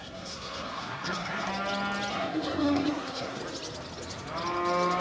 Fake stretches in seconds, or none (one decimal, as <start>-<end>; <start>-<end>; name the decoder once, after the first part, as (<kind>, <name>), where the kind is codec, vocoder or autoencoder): 0.0-1.5 (codec, SNAC); 2.1-3.4

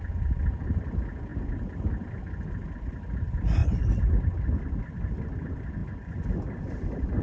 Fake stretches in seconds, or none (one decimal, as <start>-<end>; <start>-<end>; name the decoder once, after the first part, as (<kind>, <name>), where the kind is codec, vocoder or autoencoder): 5.8-7.2 (vocoder, BigVGAN v2)

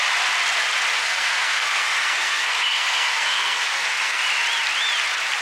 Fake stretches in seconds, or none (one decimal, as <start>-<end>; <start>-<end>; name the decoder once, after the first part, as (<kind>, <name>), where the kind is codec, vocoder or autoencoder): 1.0-4.2 (codec, SNAC)